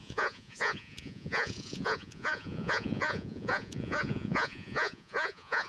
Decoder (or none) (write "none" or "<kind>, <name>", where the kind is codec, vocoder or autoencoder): vocoder, Vocos